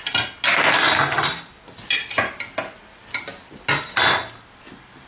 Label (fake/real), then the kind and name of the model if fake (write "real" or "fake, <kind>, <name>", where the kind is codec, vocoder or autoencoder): real